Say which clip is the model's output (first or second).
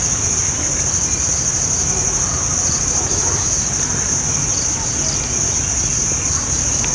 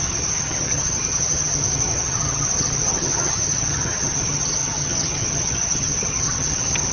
second